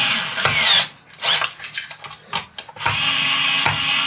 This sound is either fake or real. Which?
real